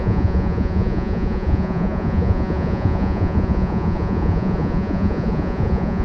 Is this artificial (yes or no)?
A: yes